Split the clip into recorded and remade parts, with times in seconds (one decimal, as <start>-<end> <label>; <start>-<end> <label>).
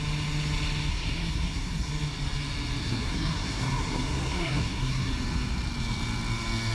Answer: 0.0-0.9 recorded; 0.9-1.9 remade; 1.9-2.8 recorded; 2.8-5.1 remade; 5.1-6.7 recorded